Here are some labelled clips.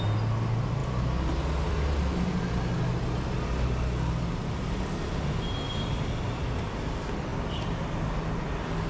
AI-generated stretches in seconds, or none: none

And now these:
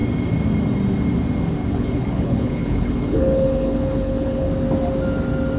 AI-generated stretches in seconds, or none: 1.6-4.5 (codec, HILCodec)